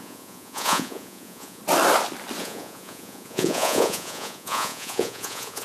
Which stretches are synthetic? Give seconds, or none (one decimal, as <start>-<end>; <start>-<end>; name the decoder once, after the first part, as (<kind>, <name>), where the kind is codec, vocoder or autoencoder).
0.0-1.6 (vocoder, Vocos); 2.4-5.6

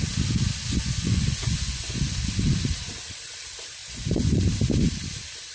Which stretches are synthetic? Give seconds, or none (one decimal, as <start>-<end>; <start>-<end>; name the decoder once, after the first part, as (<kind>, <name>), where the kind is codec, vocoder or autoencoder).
0.7-2.2 (vocoder, Vocos); 3.8-4.4

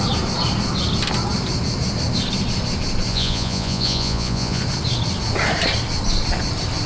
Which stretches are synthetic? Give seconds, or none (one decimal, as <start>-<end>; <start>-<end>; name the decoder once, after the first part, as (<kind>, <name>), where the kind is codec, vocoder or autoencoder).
3.1-4.6 (vocoder, Vocos)

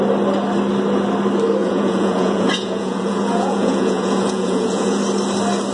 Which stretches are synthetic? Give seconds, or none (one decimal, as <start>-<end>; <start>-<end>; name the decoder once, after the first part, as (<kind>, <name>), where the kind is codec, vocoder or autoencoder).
1.6-5.0 (vocoder, Vocos)

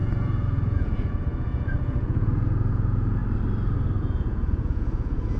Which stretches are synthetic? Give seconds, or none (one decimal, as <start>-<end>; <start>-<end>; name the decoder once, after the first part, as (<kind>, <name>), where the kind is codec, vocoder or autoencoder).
0.0-3.2 (vocoder, Vocos); 4.0-5.4